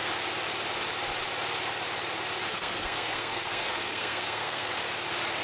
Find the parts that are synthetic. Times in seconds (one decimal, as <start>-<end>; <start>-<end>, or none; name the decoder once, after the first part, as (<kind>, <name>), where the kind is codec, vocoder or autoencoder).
2.5-4.7 (codec, SNAC)